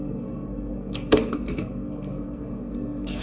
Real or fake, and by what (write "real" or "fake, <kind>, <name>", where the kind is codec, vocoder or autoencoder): fake, codec, SNAC